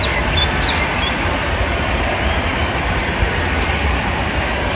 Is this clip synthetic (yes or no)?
no